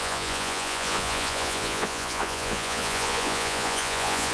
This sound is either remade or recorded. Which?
remade